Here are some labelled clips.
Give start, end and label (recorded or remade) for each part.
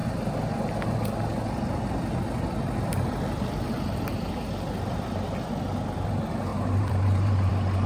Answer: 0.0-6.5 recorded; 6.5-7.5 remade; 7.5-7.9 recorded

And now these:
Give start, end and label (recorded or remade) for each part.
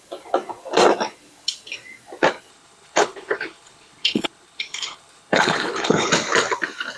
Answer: 0.0-2.5 recorded; 2.5-6.1 remade; 6.1-7.0 recorded